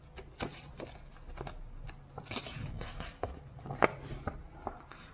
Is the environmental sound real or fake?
real